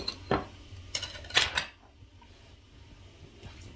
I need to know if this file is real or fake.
real